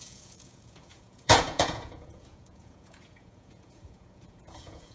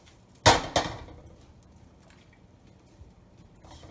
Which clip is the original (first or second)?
second